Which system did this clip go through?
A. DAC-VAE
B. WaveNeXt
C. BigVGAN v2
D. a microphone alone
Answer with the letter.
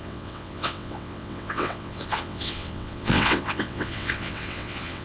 B